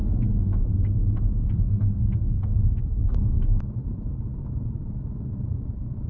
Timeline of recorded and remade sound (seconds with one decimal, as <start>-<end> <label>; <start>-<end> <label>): 0.0-3.7 remade; 3.7-6.1 recorded